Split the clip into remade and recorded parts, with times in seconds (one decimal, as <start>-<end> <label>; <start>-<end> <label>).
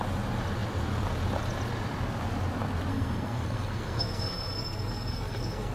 0.0-2.9 recorded; 2.9-5.7 remade